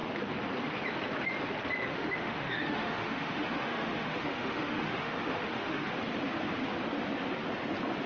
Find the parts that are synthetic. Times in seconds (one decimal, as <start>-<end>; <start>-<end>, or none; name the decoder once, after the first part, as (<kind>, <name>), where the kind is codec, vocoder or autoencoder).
1.8-5.9 (autoencoder, DAC-VAE)